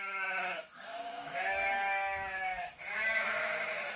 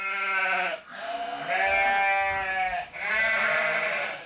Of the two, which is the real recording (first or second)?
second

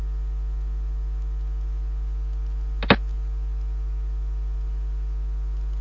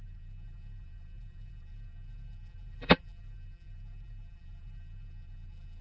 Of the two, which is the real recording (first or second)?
first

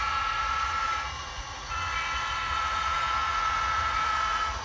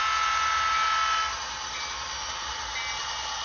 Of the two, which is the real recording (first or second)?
second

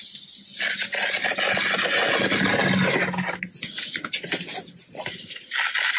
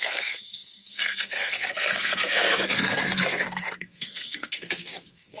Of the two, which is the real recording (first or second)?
first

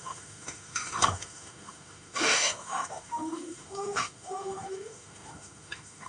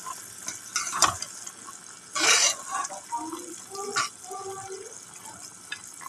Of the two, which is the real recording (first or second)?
second